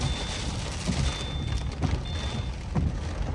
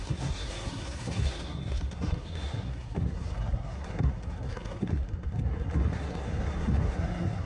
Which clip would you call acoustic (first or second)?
first